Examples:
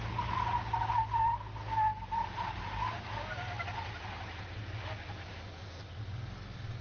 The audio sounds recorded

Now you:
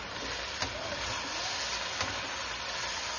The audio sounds recorded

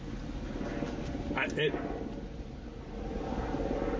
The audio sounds recorded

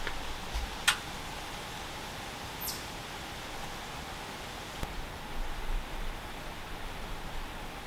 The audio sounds recorded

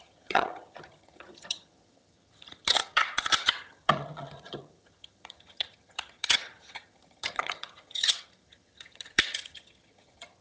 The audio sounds remade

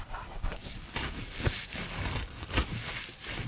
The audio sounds recorded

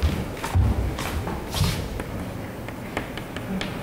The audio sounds recorded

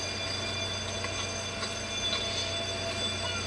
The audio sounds recorded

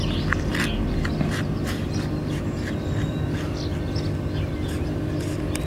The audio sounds recorded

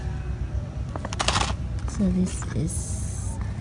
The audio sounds recorded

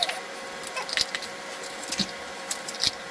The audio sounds remade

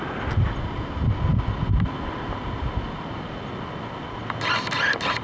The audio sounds recorded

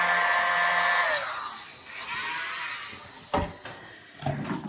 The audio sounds recorded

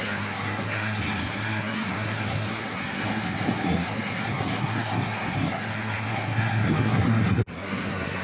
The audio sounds remade